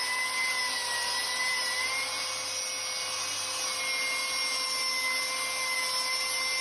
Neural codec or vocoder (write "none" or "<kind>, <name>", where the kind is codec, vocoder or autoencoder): none